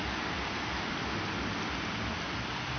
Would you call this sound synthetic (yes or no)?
no